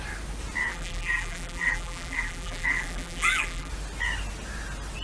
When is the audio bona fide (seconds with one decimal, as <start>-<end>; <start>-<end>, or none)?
0.0-0.7; 3.7-5.0